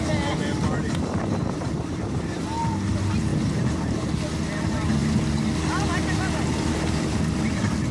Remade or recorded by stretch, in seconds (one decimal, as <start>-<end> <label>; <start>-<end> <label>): 0.0-0.8 recorded; 0.8-2.4 remade; 2.4-3.3 recorded; 3.3-4.1 remade; 4.1-7.9 recorded